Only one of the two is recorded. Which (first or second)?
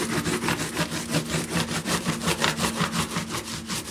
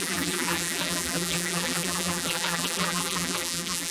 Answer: first